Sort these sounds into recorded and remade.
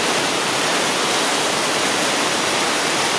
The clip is remade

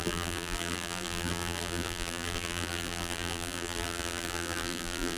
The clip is remade